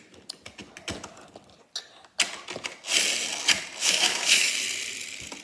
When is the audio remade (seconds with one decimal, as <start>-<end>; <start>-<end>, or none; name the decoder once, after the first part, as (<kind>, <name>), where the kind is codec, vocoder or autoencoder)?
3.8-4.5 (autoencoder, DAC-VAE)